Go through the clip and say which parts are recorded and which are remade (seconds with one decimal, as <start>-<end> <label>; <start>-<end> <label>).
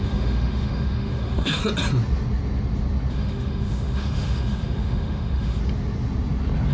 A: 0.0-1.6 remade; 1.6-3.1 recorded; 3.1-5.6 remade; 5.6-6.7 recorded